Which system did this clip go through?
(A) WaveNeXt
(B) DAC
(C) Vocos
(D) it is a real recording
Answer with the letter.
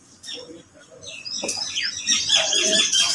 C